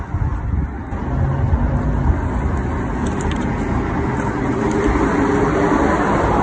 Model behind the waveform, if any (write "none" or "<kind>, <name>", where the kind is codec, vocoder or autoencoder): none